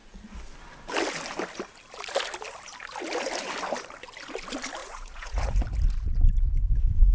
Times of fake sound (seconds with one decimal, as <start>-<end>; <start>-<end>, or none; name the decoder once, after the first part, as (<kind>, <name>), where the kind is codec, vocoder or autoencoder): 4.8-5.6 (vocoder, Vocos)